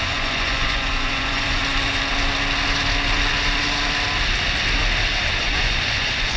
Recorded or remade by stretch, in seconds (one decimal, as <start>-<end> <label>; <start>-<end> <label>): 0.0-1.6 remade; 1.6-5.4 recorded; 5.4-6.4 remade